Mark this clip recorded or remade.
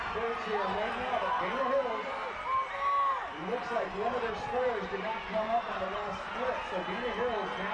recorded